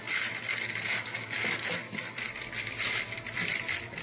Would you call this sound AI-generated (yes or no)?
no